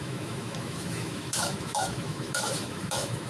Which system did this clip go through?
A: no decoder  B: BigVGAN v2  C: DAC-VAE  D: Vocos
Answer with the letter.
C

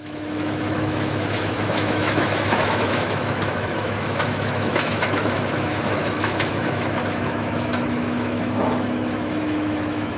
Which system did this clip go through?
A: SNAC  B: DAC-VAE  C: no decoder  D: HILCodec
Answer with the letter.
B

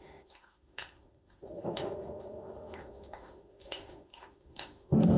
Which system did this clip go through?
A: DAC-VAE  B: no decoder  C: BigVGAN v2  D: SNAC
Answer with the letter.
A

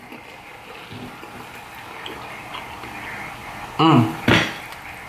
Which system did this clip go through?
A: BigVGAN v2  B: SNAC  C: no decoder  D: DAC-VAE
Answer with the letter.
C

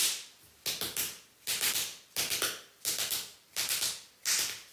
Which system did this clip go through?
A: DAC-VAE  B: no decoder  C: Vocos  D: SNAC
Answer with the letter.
B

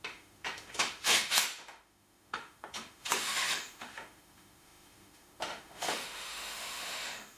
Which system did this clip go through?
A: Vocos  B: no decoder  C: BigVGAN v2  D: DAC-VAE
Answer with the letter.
D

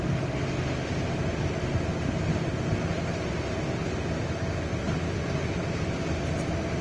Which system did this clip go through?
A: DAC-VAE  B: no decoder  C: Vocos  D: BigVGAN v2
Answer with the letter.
B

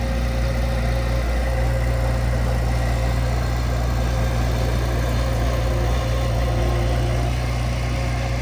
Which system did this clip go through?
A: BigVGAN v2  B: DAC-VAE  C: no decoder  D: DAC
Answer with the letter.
C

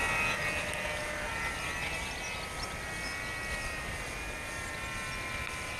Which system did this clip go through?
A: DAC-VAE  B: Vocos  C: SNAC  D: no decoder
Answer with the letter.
D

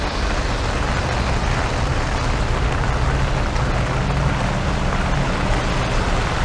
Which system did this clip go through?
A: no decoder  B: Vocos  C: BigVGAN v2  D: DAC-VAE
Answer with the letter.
A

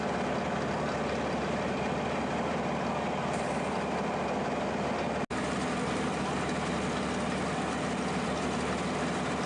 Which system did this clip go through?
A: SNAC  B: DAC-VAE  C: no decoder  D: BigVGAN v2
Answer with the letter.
C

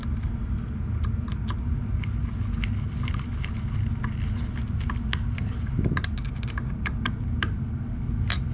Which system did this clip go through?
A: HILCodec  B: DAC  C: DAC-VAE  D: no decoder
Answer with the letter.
D